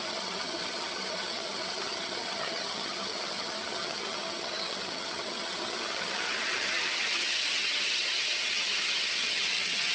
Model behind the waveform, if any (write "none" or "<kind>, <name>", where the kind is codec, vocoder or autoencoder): vocoder, HiFi-GAN